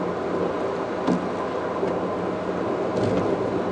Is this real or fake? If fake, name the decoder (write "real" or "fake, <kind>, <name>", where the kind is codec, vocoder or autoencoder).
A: real